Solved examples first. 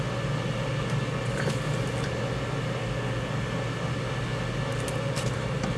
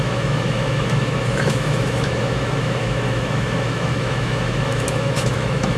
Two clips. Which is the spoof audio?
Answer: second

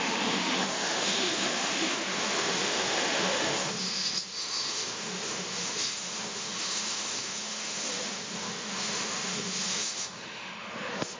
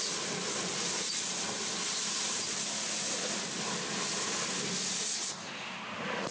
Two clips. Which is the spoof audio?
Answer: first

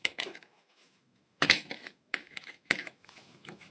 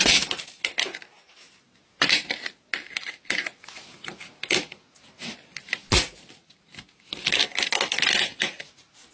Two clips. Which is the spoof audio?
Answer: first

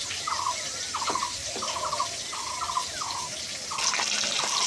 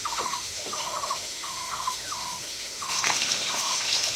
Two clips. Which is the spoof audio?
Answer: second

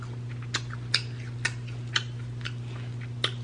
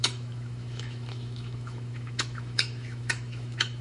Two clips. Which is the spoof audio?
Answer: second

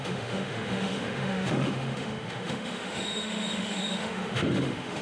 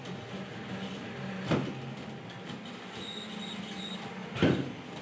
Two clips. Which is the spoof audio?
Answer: first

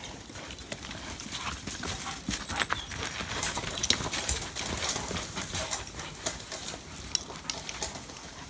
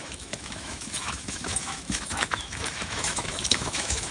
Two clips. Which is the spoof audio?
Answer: second